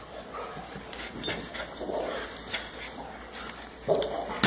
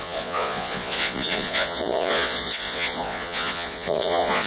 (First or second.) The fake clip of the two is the second